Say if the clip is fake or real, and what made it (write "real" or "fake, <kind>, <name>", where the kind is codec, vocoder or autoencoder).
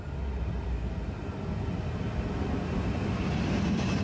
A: real